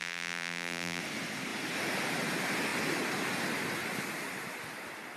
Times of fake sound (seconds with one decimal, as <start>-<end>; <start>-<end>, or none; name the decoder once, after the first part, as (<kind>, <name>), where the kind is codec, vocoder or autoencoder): 0.0-1.0 (vocoder, BigVGAN v2)